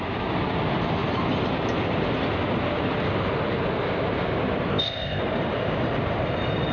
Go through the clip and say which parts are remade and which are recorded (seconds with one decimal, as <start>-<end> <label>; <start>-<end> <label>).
0.0-4.7 recorded; 4.7-5.2 remade; 5.2-6.7 recorded

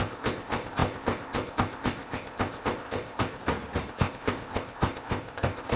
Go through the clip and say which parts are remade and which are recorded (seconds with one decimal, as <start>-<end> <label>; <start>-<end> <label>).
0.0-3.4 remade; 3.4-3.9 recorded; 3.9-5.8 remade

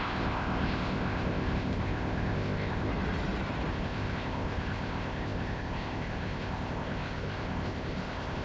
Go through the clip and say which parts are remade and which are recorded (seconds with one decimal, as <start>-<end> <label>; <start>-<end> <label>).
0.0-2.9 remade; 2.9-3.7 recorded; 3.7-8.4 remade

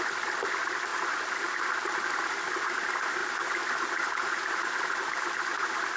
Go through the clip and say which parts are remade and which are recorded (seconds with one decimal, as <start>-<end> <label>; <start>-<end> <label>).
0.0-6.0 recorded

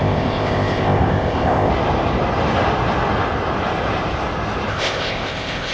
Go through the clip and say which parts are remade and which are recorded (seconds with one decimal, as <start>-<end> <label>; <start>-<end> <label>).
0.0-1.7 remade; 1.7-4.7 recorded; 4.7-5.7 remade

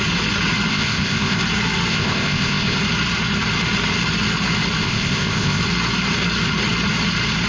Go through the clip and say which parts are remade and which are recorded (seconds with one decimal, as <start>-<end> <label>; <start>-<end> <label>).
0.0-0.7 recorded; 0.7-1.4 remade; 1.4-1.9 recorded; 1.9-2.8 remade; 2.8-4.8 recorded; 4.8-5.6 remade; 5.6-7.5 recorded